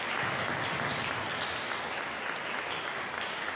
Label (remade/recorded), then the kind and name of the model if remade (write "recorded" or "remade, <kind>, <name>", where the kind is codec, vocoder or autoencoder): recorded